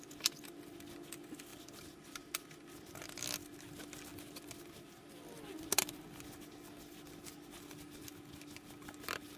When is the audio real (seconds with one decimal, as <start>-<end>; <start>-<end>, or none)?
0.0-9.4